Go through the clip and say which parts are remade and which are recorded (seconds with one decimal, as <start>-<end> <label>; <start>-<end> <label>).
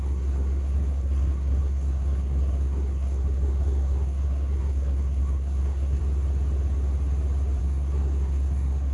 0.0-6.0 remade; 6.0-7.6 recorded; 7.6-8.9 remade